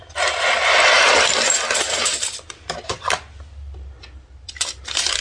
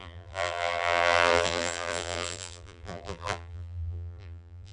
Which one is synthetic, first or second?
second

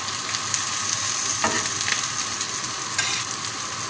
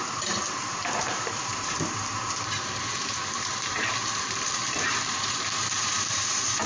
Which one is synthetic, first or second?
second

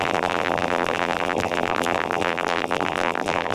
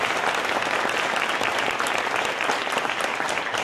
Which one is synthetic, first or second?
first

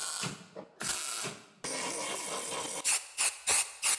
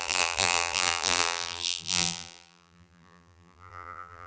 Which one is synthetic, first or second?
second